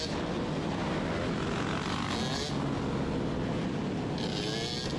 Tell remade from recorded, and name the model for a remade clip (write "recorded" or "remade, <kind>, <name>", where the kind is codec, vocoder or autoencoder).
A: recorded